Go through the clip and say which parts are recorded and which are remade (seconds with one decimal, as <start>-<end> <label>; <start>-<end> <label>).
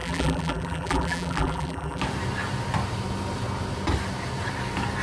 0.0-2.0 remade; 2.0-5.0 recorded